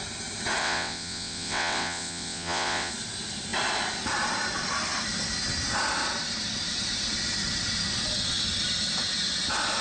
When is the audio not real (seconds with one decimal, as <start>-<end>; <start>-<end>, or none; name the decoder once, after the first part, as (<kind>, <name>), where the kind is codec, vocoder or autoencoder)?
0.6-2.9 (vocoder, WaveNeXt)